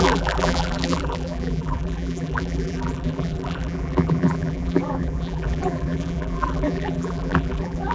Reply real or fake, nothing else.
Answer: fake